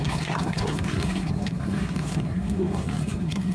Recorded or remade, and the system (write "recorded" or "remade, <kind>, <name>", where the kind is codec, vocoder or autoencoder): remade, codec, SNAC